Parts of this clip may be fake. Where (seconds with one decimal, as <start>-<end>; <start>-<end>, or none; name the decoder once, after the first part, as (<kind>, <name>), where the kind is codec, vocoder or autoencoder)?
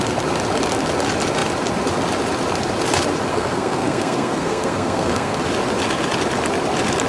3.3-5.4 (codec, SNAC)